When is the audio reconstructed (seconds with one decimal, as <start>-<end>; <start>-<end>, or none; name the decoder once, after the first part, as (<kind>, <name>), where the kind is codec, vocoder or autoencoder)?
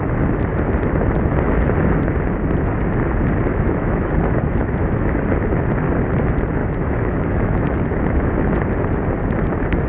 3.5-5.2 (autoencoder, DAC-VAE); 6.6-8.3